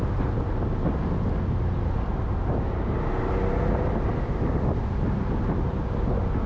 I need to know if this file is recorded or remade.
recorded